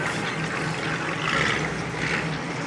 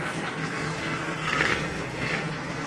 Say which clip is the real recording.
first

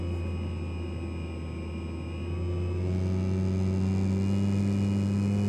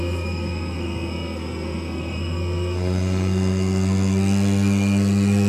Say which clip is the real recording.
first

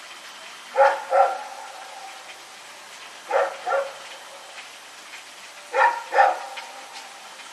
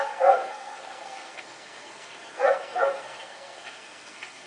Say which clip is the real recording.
first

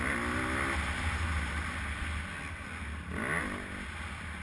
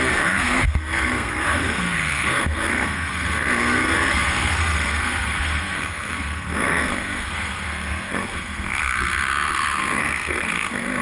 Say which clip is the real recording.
first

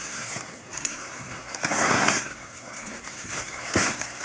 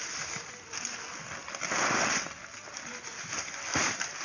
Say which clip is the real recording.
second